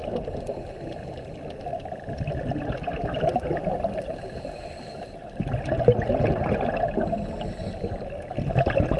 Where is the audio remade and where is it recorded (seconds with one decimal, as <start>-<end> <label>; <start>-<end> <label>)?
0.0-9.0 recorded